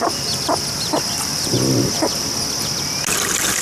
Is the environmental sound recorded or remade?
recorded